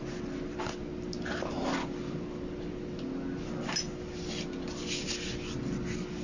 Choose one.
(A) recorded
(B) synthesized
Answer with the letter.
A